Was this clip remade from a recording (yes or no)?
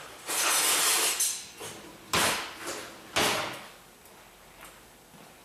no